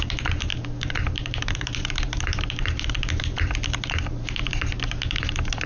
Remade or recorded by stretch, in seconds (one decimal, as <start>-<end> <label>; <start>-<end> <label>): 0.0-5.7 remade

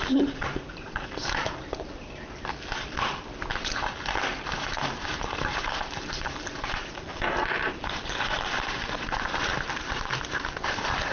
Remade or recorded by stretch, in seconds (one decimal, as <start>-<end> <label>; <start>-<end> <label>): 0.0-2.0 remade; 2.0-4.3 recorded; 4.3-11.1 remade

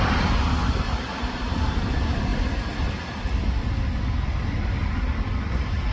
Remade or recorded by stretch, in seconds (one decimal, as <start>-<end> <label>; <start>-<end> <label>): 0.0-2.3 recorded; 2.3-2.9 remade; 2.9-5.9 recorded